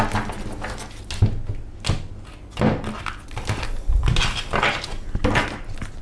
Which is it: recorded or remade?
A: recorded